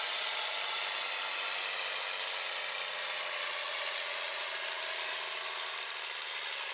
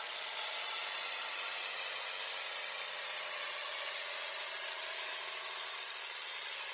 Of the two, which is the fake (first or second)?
second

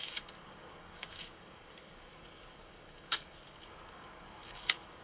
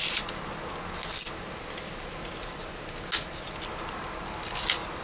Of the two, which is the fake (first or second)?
first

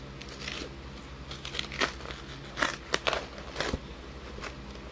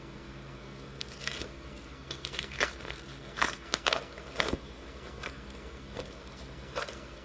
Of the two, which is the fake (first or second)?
second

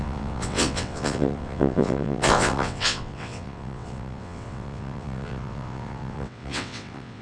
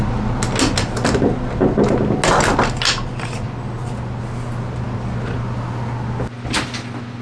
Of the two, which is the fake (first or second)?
first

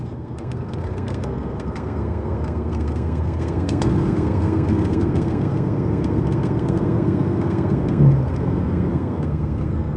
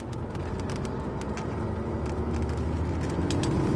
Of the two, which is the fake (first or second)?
first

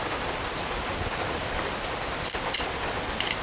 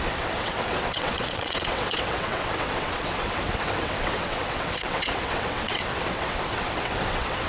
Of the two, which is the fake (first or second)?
second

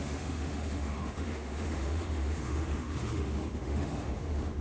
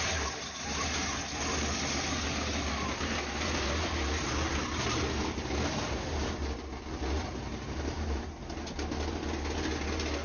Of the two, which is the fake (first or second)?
first